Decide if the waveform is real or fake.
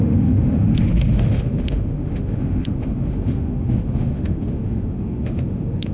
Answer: fake